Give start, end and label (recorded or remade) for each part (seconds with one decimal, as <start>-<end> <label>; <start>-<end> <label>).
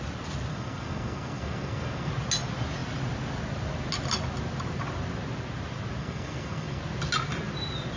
0.0-0.5 recorded; 0.5-2.1 remade; 2.1-6.0 recorded; 6.0-6.8 remade; 6.8-8.0 recorded